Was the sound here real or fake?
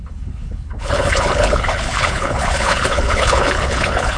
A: fake